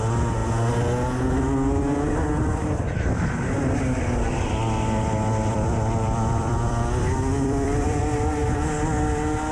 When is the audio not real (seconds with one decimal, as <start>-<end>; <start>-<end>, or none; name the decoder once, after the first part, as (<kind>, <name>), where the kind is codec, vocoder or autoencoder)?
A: 5.5-8.0 (vocoder, BigVGAN v2)